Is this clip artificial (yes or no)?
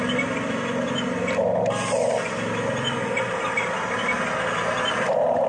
no